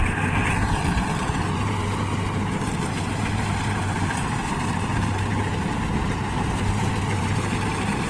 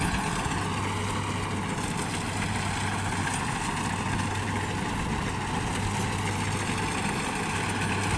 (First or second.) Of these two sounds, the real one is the second